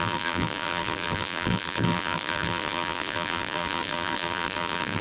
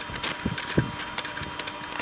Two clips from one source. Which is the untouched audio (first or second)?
second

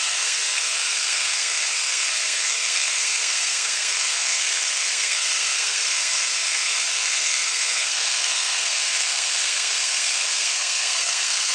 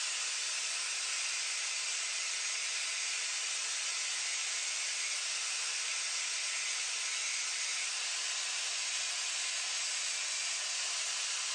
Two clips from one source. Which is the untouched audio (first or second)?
second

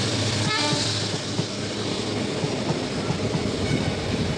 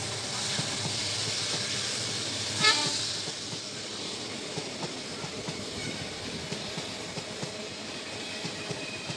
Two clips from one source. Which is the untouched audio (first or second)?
first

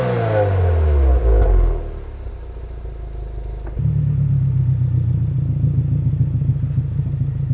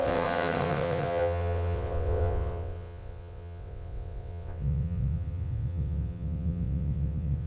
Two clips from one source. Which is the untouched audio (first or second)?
first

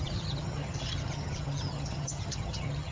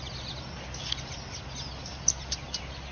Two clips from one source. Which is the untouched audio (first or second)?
second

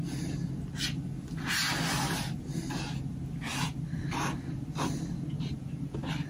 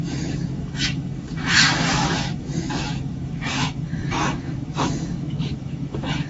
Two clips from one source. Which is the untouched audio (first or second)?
first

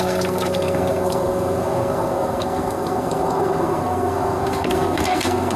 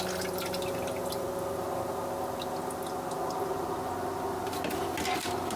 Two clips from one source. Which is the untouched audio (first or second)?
second